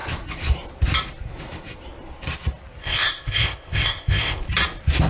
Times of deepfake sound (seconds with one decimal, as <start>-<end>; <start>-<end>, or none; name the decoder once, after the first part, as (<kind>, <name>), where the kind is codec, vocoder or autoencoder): 2.8-4.4 (codec, ZipCodec)